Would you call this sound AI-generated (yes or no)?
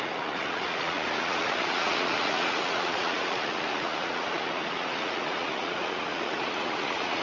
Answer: yes